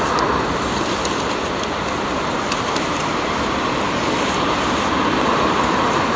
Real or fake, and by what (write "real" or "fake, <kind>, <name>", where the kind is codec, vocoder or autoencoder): real